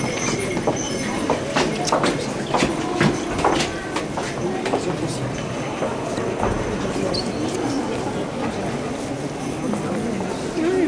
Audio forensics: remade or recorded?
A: recorded